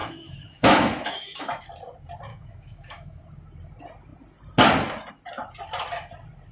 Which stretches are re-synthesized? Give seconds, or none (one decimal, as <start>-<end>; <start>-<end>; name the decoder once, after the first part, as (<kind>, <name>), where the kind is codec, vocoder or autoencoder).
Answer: 0.0-1.6 (autoencoder, DAC-VAE); 2.3-3.2